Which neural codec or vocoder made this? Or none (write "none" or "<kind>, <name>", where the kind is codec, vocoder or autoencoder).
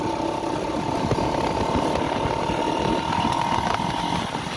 none